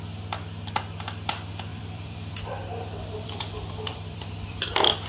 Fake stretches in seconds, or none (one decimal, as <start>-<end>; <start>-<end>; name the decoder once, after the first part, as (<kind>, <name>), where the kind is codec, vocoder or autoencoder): 1.7-5.1 (vocoder, BigVGAN v2)